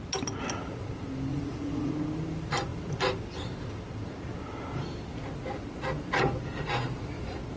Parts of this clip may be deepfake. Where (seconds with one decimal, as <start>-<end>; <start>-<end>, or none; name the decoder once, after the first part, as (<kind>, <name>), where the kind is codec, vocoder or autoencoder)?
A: 1.3-1.9 (vocoder, Vocos)